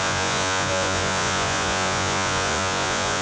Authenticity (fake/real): fake